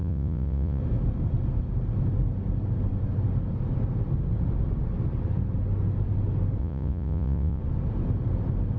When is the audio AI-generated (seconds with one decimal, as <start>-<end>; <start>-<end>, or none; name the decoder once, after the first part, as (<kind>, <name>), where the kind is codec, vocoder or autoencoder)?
0.0-0.8 (vocoder, Vocos); 6.6-7.6

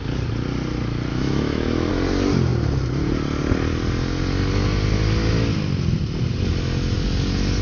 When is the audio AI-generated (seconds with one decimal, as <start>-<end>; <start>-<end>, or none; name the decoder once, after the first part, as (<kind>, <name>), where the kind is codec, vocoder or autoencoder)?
1.1-1.9 (autoencoder, DAC-VAE)